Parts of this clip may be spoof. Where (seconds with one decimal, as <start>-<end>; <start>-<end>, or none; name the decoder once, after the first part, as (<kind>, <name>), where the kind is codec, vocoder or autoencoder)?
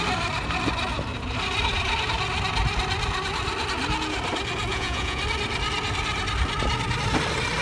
4.7-5.2 (vocoder, Vocos)